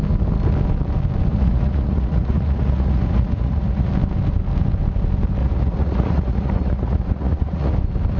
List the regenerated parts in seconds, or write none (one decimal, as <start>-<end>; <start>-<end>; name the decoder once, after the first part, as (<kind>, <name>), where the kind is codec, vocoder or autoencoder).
1.3-3.9 (vocoder, Vocos); 5.4-7.7